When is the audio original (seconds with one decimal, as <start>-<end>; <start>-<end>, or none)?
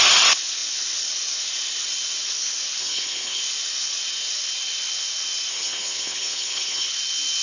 0.0-2.8; 3.4-5.5; 6.9-7.4